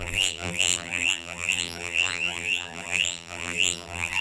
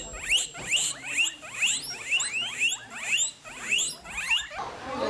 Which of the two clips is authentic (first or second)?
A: second